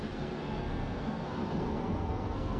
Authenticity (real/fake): fake